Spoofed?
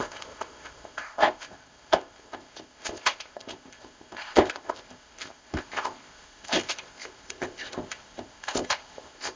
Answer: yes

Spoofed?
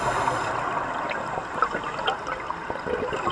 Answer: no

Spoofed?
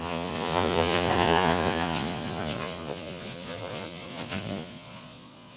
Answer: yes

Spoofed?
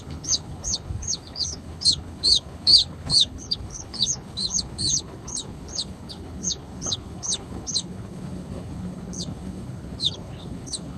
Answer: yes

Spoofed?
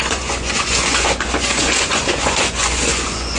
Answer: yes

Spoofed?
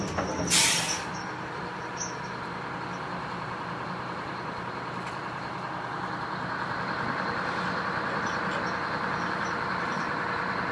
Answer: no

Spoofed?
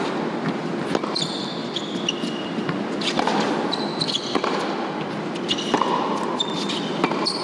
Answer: no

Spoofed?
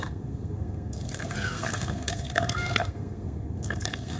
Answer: yes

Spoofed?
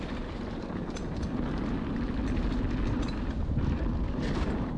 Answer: no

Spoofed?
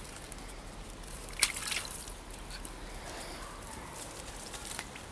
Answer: no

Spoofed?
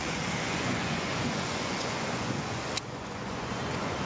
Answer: yes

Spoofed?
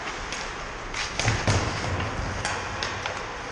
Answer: no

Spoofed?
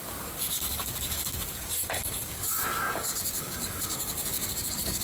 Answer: yes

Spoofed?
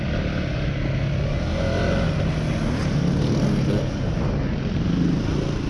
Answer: no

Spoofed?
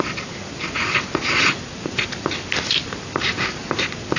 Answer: no